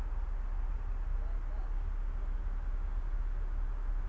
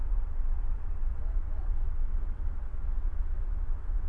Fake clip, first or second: second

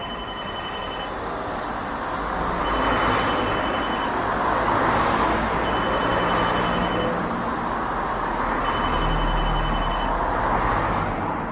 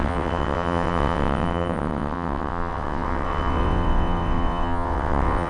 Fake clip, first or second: second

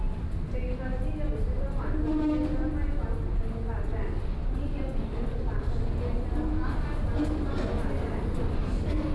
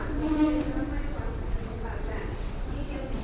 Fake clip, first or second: second